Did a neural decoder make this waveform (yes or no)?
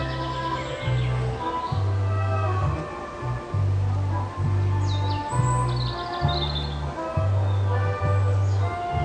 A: no